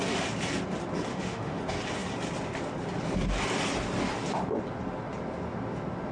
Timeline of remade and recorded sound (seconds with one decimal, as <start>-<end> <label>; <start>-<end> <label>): 0.0-1.1 recorded; 1.1-1.6 remade; 1.6-6.1 recorded